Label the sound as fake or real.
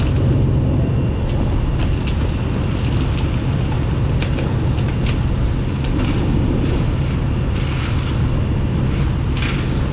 real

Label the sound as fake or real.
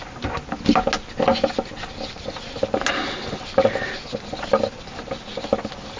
real